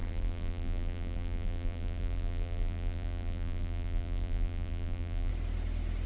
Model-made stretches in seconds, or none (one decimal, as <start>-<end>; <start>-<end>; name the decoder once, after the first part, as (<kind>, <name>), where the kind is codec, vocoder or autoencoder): 0.0-5.3 (vocoder, BigVGAN v2)